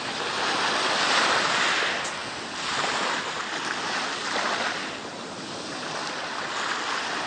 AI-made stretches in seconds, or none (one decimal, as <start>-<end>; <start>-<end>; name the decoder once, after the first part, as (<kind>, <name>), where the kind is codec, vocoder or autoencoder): none